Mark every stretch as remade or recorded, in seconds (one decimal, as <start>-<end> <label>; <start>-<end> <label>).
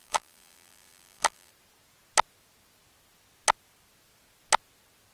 0.0-1.5 remade; 1.5-5.1 recorded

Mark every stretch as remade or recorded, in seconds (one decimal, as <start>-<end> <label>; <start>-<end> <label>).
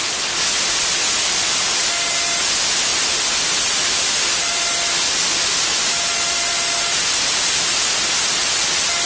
0.0-9.1 recorded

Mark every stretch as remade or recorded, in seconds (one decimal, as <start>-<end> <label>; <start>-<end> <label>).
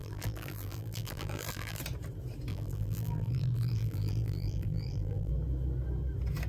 0.0-1.8 remade; 1.8-2.5 recorded; 2.5-5.3 remade; 5.3-6.5 recorded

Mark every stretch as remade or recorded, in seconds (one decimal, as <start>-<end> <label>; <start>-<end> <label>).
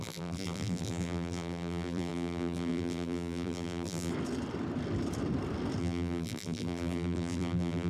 0.0-4.1 remade; 4.1-5.8 recorded; 5.8-7.9 remade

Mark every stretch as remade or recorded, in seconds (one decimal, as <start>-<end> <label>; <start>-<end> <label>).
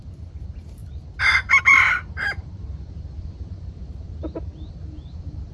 0.0-0.8 remade; 0.8-1.6 recorded; 1.6-4.2 remade; 4.2-4.8 recorded; 4.8-5.5 remade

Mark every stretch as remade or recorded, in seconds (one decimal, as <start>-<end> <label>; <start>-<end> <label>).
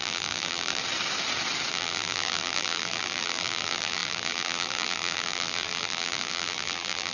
0.0-0.8 remade; 0.8-1.7 recorded; 1.7-7.1 remade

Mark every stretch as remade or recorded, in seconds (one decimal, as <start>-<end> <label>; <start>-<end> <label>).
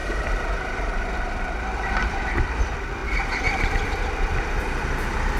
0.0-2.5 remade; 2.5-5.4 recorded